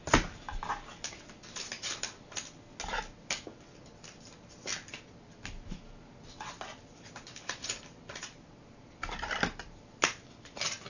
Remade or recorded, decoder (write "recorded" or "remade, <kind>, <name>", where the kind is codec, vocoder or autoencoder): recorded